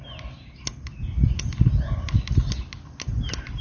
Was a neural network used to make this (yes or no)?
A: no